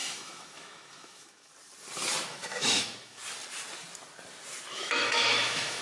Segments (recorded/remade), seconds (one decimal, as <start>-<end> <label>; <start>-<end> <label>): 0.0-1.5 remade; 1.5-2.3 recorded; 2.3-3.2 remade; 3.2-4.7 recorded; 4.7-5.8 remade